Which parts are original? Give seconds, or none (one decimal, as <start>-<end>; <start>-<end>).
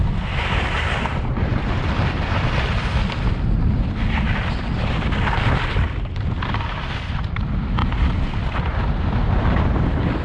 0.0-10.2